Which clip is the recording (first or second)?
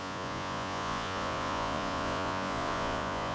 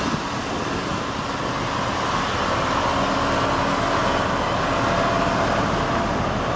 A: second